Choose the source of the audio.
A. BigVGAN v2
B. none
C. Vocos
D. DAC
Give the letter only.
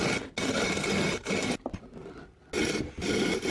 B